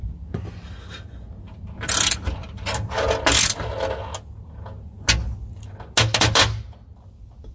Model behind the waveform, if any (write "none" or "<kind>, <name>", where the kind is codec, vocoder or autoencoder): none